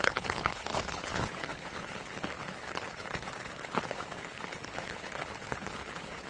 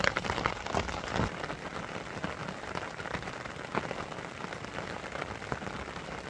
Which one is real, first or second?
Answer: second